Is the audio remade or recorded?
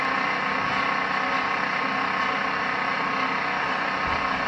recorded